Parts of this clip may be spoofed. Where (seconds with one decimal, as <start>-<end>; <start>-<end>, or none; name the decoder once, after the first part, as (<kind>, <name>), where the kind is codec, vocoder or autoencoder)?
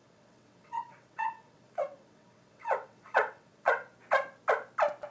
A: 0.0-3.9 (vocoder, WaveNeXt)